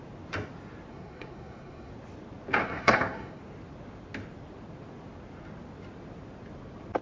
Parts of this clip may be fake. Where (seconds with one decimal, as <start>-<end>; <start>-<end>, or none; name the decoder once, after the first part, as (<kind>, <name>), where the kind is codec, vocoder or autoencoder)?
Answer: 0.9-1.9 (codec, SNAC); 2.6-3.4